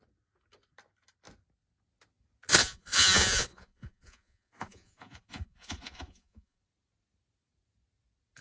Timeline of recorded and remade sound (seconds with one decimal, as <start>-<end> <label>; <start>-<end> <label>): 0.0-2.6 recorded; 2.6-6.6 remade; 6.6-8.4 recorded